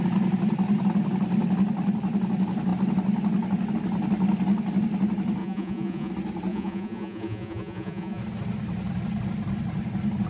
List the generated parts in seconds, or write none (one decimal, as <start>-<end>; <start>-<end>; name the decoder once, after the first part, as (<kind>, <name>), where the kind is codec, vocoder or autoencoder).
5.4-6.1 (vocoder, Vocos); 6.5-8.2